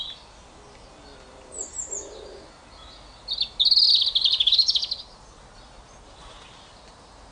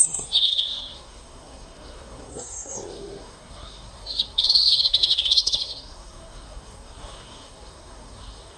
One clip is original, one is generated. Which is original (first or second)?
first